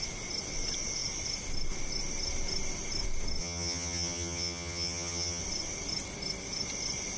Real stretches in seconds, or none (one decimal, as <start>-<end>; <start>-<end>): 0.0-3.4; 5.4-7.2